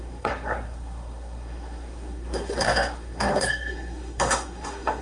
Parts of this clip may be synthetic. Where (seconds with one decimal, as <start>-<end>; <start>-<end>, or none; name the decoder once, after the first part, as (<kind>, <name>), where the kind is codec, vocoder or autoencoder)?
0.0-5.0 (codec, SNAC)